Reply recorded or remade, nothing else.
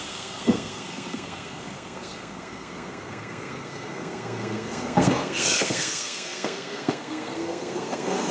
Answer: remade